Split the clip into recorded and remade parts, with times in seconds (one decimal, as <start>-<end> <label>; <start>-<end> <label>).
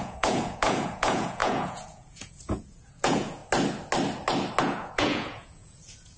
0.0-3.4 remade; 3.4-4.6 recorded; 4.6-6.2 remade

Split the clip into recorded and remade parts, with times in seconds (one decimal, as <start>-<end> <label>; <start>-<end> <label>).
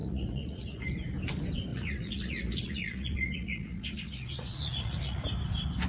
0.0-0.9 remade; 0.9-1.7 recorded; 1.7-5.2 remade; 5.2-5.9 recorded